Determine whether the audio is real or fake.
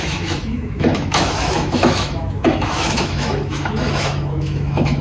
fake